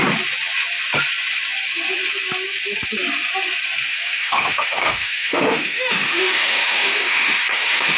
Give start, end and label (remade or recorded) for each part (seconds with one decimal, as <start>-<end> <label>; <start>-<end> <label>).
0.0-3.9 recorded; 3.9-8.0 remade